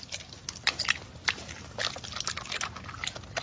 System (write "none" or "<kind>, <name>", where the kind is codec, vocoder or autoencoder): none